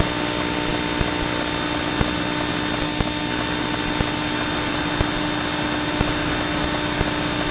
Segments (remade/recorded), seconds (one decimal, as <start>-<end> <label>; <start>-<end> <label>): 0.0-7.5 recorded